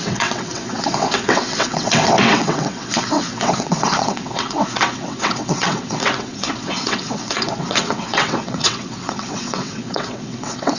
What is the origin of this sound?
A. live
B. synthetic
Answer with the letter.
B